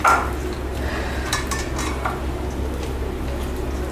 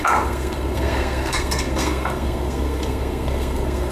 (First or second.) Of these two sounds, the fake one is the second